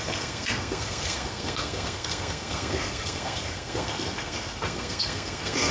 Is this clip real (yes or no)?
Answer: no